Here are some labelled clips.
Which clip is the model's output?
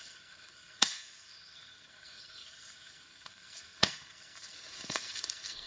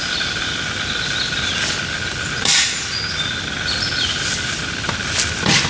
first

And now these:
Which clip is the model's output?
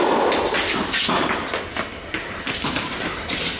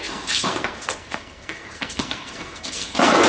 second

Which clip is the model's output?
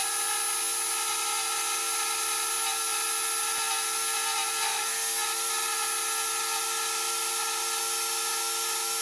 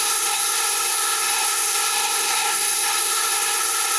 second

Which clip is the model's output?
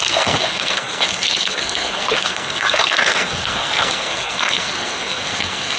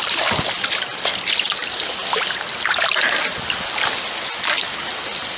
first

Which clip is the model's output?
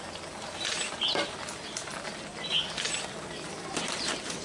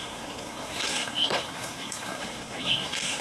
second